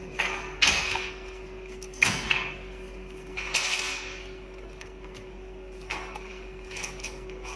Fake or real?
fake